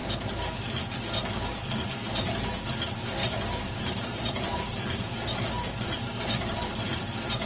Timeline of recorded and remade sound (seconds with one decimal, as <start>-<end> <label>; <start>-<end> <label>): 0.0-3.2 recorded; 3.2-6.7 remade; 6.7-7.4 recorded